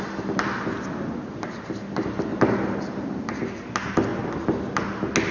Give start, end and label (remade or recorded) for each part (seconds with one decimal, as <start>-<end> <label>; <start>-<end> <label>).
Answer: 0.0-5.3 recorded